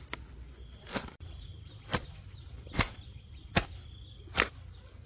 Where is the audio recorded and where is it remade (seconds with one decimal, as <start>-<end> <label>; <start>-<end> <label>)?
0.0-0.9 recorded; 0.9-1.5 remade; 1.5-1.9 recorded; 1.9-5.1 remade